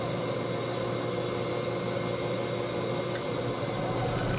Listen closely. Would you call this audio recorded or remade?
recorded